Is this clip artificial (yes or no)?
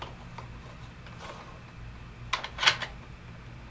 no